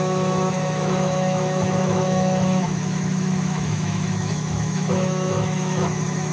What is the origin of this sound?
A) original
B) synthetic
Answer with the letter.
B